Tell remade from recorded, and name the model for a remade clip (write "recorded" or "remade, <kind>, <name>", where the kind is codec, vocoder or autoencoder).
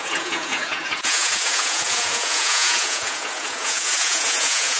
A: remade, vocoder, Vocos